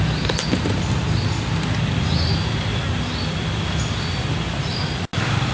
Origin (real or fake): real